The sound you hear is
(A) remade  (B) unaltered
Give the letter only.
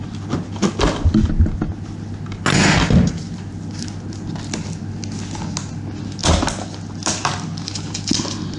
B